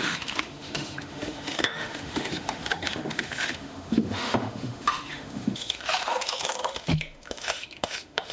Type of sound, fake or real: fake